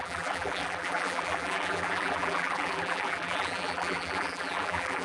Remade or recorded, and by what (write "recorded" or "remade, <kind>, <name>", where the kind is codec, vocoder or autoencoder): remade, vocoder, BigVGAN v2